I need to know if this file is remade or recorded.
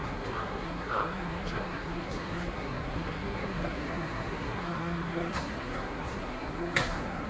remade